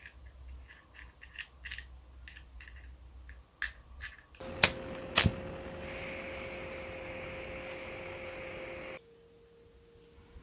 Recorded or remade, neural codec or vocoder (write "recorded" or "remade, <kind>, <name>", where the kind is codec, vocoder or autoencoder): recorded